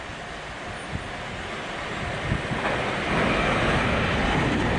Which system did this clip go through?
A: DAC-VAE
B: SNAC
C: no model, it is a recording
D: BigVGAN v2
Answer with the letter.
C